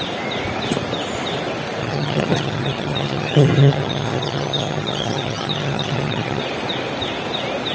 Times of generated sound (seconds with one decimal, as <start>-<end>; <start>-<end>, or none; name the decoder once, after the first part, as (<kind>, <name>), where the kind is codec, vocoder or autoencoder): 1.8-6.4 (vocoder, HiFi-GAN)